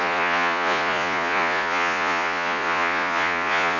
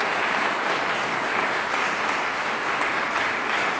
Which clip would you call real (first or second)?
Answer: second